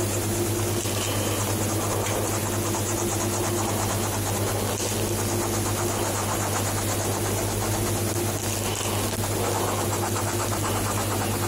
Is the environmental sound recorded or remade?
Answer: recorded